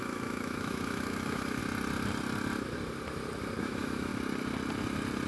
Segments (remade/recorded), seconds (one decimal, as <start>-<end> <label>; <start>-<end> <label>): 0.0-1.6 remade; 1.6-3.6 recorded; 3.6-4.1 remade; 4.1-5.3 recorded